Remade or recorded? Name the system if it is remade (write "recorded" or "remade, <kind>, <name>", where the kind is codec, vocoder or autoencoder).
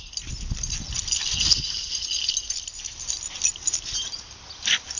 recorded